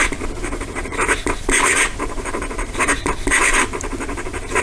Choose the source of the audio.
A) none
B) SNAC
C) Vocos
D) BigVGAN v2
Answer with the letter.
D